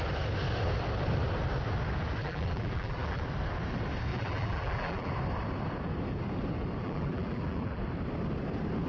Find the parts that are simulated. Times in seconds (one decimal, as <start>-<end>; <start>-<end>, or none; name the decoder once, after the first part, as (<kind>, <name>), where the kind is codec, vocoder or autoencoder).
2.2-3.2 (vocoder, BigVGAN v2); 4.1-5.1; 6.8-7.8